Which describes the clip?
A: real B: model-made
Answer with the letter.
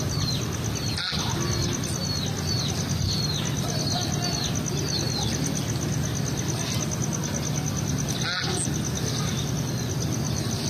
A